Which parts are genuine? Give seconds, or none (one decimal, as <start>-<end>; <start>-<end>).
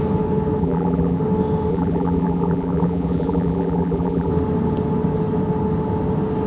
0.0-0.6; 1.2-1.7; 4.3-6.5